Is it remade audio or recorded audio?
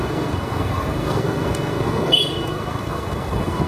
remade